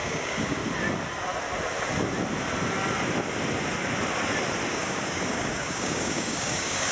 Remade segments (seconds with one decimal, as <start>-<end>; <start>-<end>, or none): 0.0-0.6; 4.7-6.9